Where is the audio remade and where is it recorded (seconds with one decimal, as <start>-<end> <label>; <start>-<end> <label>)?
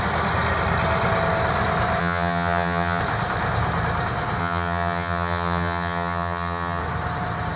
0.0-2.0 recorded; 2.0-3.0 remade; 3.0-4.4 recorded; 4.4-6.8 remade; 6.8-7.6 recorded